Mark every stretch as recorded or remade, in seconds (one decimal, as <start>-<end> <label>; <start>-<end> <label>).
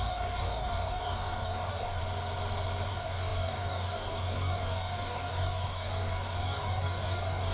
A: 0.0-2.0 remade; 2.0-2.9 recorded; 2.9-7.5 remade